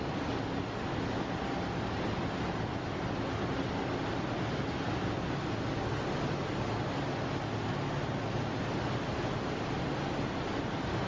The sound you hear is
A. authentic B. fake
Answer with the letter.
A